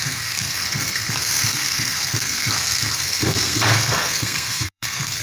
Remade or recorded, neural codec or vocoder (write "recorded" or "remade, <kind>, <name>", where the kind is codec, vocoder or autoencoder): remade, codec, SNAC